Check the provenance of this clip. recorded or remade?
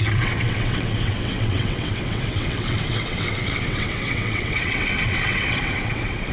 remade